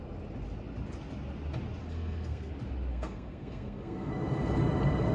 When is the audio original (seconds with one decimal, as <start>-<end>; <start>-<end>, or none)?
0.0-1.8; 2.5-2.9; 4.1-5.1